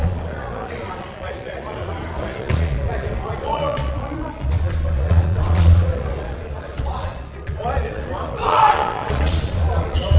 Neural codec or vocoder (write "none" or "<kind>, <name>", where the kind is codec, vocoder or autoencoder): vocoder, Vocos